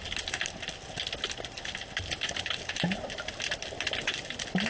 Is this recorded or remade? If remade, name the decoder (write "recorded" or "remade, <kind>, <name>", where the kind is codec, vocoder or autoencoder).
recorded